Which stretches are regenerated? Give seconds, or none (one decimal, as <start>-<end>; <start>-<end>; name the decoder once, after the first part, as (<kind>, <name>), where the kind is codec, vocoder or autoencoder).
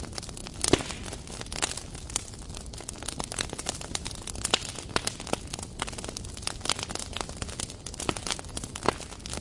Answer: none